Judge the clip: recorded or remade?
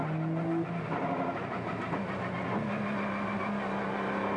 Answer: recorded